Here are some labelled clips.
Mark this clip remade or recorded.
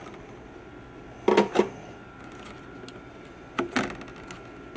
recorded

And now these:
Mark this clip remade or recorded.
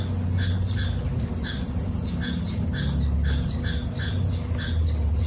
recorded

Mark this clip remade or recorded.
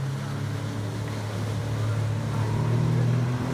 recorded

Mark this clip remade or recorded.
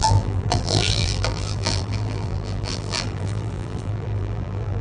remade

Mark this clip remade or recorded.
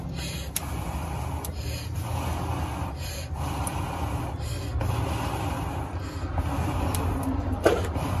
recorded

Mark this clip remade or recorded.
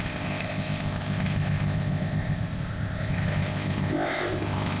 remade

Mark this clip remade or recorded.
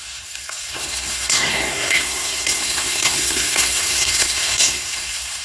remade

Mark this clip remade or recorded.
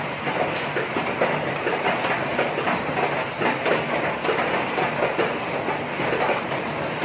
remade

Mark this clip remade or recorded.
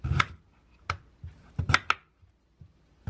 recorded